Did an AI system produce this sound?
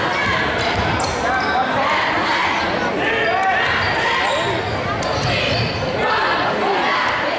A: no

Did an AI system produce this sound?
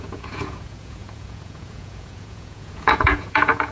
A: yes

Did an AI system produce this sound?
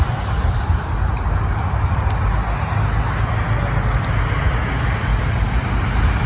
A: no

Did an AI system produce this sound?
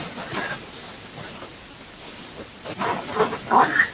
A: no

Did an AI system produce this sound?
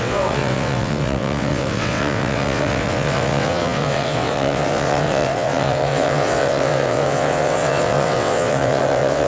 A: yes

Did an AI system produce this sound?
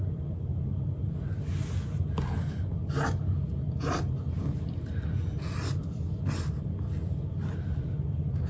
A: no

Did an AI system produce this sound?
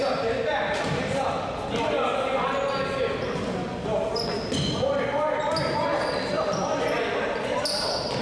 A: no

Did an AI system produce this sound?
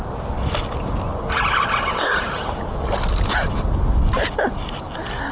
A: no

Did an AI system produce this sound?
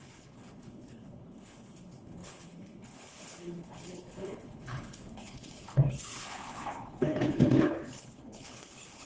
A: yes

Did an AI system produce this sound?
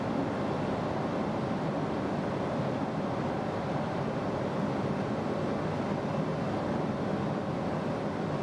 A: no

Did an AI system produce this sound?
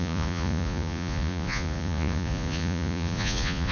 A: yes